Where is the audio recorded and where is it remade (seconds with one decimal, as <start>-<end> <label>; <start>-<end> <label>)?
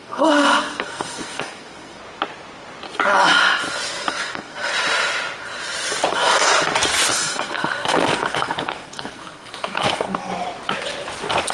0.0-2.0 remade; 2.0-4.1 recorded; 4.1-4.7 remade; 4.7-6.1 recorded; 6.1-6.5 remade; 6.5-7.1 recorded; 7.1-10.3 remade; 10.3-11.5 recorded